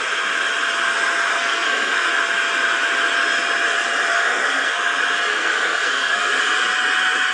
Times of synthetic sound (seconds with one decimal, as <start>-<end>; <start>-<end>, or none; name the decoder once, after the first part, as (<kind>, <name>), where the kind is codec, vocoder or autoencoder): 1.3-2.1 (codec, SNAC); 4.1-4.8; 5.3-6.4

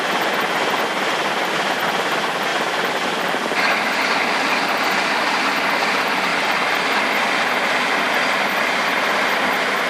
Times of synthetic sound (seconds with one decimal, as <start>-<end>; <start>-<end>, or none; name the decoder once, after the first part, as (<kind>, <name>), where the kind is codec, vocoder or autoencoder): none

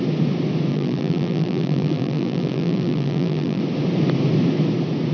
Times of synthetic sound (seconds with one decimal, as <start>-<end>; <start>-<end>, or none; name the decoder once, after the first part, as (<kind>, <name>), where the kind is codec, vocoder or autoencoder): 0.7-3.6 (vocoder, BigVGAN v2)

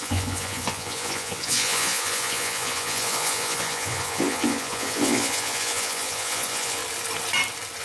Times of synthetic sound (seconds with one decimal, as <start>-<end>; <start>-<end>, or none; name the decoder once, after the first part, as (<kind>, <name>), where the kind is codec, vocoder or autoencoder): 0.0-6.8 (vocoder, Vocos)